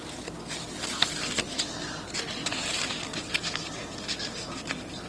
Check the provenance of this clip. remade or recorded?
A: recorded